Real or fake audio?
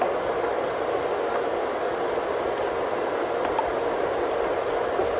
real